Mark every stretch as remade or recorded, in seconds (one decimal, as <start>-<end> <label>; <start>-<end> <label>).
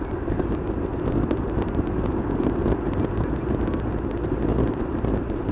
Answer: 0.0-5.5 recorded